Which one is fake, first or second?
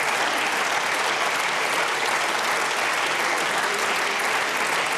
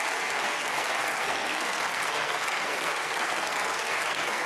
second